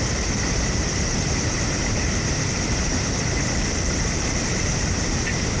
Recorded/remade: remade